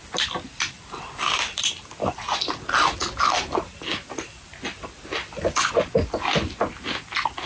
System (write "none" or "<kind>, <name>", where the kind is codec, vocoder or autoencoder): none